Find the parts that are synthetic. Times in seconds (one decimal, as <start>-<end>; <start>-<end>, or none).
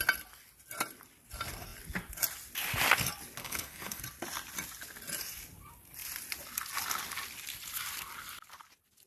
3.4-4.0